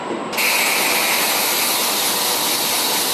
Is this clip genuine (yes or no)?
yes